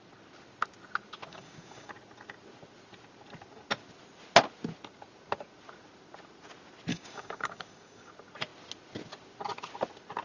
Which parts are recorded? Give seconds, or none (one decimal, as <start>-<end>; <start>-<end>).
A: 0.0-1.3; 1.9-6.9; 8.1-10.2